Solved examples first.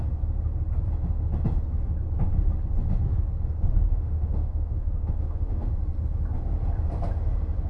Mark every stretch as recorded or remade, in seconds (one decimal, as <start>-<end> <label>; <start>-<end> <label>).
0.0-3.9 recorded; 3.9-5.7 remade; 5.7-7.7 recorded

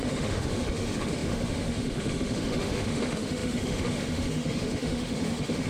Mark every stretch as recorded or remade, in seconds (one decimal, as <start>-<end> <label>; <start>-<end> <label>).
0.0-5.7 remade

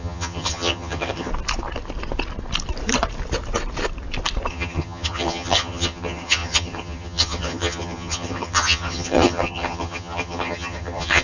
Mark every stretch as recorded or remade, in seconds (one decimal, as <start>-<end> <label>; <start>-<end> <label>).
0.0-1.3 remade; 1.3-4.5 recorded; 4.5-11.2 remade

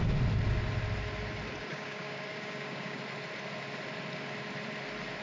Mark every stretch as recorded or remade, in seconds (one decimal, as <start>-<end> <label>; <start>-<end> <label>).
0.0-1.7 recorded; 1.7-3.0 remade; 3.0-5.2 recorded